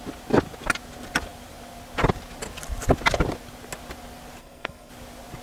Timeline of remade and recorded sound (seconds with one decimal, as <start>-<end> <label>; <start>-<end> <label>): 0.0-4.4 recorded; 4.4-4.9 remade; 4.9-5.4 recorded